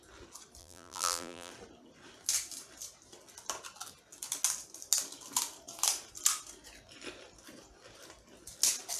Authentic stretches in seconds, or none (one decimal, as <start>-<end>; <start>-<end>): 0.0-0.6; 1.5-9.0